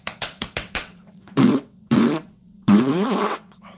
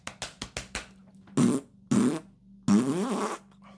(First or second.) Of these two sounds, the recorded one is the second